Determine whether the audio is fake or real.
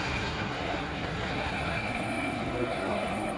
fake